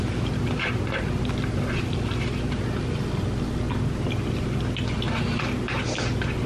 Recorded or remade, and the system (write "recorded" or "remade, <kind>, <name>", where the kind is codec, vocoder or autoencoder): recorded